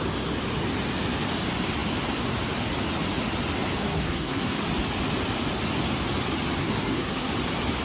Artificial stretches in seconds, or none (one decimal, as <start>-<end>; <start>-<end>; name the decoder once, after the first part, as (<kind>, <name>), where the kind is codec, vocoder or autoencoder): 3.8-4.6 (codec, SNAC); 6.6-7.3